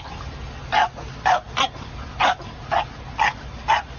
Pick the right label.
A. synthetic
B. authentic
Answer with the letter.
B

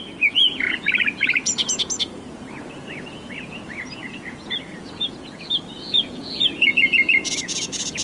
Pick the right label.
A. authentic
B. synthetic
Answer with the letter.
B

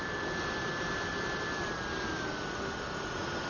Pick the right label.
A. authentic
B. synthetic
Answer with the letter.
A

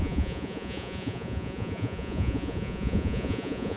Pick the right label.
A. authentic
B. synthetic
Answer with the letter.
B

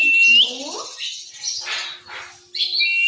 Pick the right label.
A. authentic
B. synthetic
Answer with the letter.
A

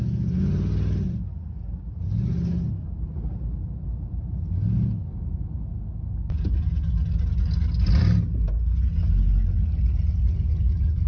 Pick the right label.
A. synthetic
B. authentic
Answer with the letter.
B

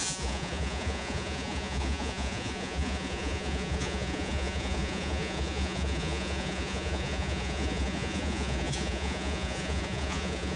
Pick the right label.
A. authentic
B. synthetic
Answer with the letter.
B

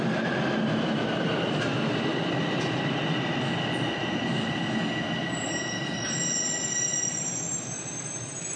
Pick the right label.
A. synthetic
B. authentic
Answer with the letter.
B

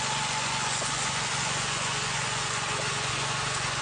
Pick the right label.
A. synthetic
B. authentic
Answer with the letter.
A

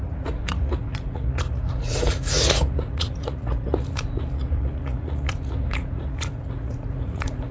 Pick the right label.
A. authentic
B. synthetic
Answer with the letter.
B